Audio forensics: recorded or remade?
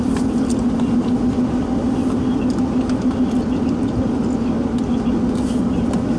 recorded